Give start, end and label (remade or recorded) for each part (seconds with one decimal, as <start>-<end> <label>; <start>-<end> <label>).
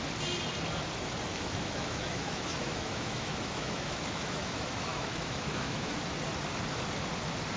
0.0-1.3 recorded; 1.3-5.9 remade; 5.9-7.6 recorded